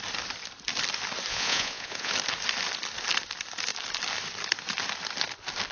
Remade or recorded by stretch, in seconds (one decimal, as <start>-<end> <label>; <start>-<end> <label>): 0.0-1.3 recorded; 1.3-2.1 remade; 2.1-5.7 recorded